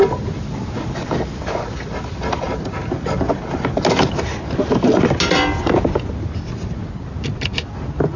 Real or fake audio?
real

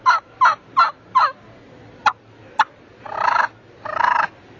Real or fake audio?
real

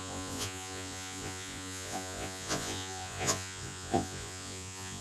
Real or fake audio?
fake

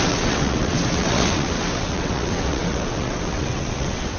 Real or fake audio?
fake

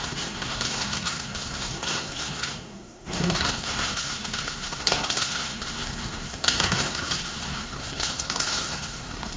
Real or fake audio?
fake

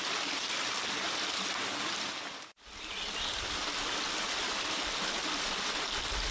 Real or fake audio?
real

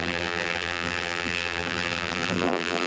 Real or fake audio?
fake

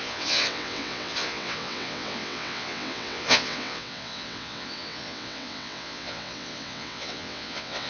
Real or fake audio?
fake